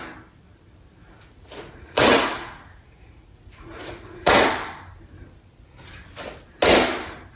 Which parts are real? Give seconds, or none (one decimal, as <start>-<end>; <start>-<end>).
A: 0.0-1.0; 4.5-7.4